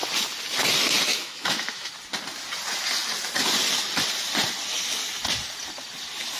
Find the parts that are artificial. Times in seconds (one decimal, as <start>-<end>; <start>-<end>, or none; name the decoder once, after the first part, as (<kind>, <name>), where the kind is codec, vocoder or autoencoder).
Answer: 1.1-1.9 (autoencoder, DAC-VAE)